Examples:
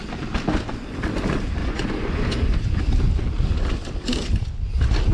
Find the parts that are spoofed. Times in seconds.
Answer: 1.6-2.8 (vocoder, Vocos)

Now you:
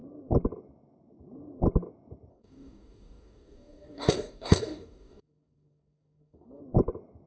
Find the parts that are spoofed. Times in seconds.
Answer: 2.3-6.6 (codec, DAC)